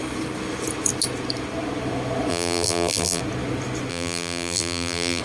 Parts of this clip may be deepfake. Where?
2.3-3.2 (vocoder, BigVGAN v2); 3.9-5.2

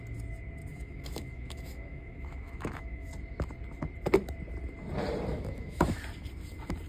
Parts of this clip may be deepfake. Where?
0.7-3.1 (autoencoder, DAC-VAE); 5.3-6.0

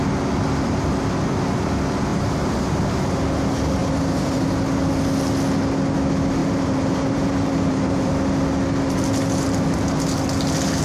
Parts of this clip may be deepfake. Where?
2.1-3.2 (vocoder, BigVGAN v2); 3.8-4.5; 6.4-8.1